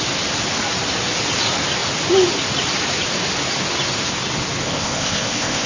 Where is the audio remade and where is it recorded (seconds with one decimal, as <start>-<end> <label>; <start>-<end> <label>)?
0.0-4.6 recorded; 4.6-5.7 remade

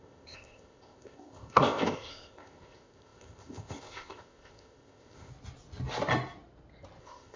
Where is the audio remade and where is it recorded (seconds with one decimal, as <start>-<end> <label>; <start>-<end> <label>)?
0.0-5.3 remade; 5.3-7.0 recorded; 7.0-7.4 remade

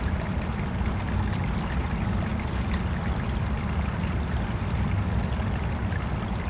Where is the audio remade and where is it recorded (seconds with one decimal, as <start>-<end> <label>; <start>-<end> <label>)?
0.0-6.5 recorded

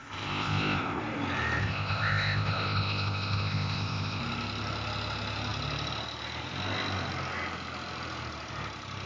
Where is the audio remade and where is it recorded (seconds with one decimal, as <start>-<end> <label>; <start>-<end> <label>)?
0.0-1.0 remade; 1.0-1.6 recorded; 1.6-4.2 remade; 4.2-9.1 recorded

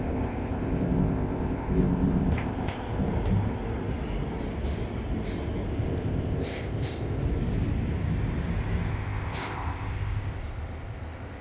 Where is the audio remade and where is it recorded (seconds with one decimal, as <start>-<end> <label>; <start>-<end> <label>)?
0.0-3.1 remade; 3.1-5.7 recorded; 5.7-7.2 remade; 7.2-8.9 recorded; 8.9-11.4 remade

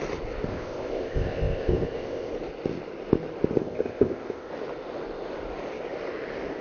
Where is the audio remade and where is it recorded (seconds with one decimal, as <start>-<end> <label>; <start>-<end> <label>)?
0.0-0.5 recorded; 0.5-2.3 remade; 2.3-3.6 recorded; 3.6-4.5 remade; 4.5-6.6 recorded